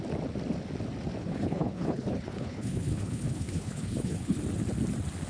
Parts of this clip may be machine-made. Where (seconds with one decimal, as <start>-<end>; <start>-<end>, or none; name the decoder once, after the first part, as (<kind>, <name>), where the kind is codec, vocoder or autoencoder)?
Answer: 1.2-4.4 (codec, HILCodec)